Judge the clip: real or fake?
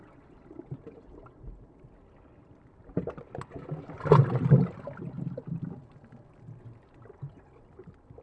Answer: real